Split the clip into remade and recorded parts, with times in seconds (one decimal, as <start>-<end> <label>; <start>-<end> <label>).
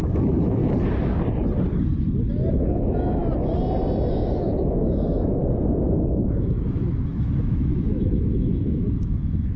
0.0-0.6 remade; 0.6-2.5 recorded; 2.5-3.2 remade; 3.2-4.1 recorded; 4.1-5.4 remade; 5.4-6.1 recorded; 6.1-9.6 remade